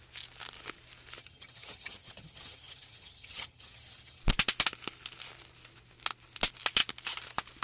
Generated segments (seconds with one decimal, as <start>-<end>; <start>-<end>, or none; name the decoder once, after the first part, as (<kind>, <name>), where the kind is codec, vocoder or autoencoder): 1.2-4.2 (vocoder, HiFi-GAN)